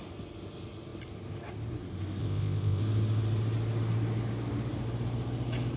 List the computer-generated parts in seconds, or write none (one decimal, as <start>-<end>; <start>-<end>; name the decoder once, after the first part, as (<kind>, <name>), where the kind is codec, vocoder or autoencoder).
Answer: 2.2-2.8 (codec, ZipCodec)

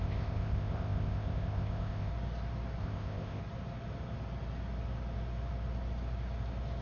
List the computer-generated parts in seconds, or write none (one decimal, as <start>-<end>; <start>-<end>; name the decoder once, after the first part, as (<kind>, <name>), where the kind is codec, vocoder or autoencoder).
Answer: 0.0-2.1 (codec, ZipCodec); 2.8-3.4

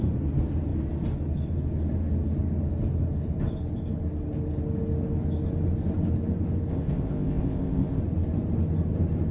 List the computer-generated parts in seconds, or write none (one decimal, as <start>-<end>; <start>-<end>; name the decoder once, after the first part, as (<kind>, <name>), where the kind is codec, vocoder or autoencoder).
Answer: 6.7-8.0 (codec, ZipCodec)

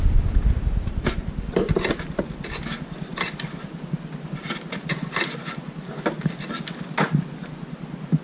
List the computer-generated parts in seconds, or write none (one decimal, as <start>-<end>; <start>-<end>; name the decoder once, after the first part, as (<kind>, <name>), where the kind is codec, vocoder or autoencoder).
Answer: none

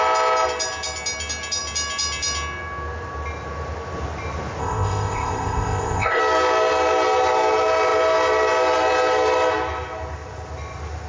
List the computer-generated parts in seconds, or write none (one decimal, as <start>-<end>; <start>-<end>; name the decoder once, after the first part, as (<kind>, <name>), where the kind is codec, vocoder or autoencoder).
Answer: 4.6-6.2 (codec, ZipCodec)

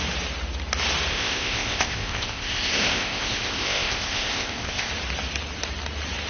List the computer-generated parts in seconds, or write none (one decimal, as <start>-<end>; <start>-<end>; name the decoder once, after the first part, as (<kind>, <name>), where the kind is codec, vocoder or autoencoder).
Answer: 1.1-4.9 (codec, ZipCodec)